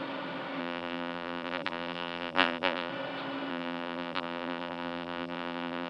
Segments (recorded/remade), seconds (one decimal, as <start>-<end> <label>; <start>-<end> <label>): 0.0-0.6 recorded; 0.6-2.9 remade; 2.9-3.5 recorded; 3.5-5.9 remade